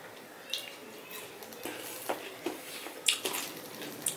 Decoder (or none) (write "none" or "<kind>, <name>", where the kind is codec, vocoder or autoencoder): none